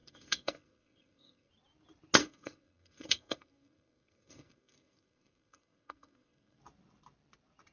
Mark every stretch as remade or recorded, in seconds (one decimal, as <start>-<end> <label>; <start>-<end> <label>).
0.0-1.5 remade; 1.5-2.2 recorded; 2.2-6.6 remade; 6.6-7.7 recorded